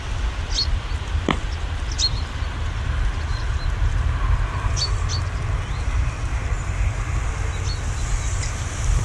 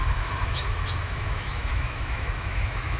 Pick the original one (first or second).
first